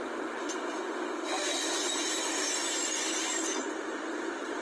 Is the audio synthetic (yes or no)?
yes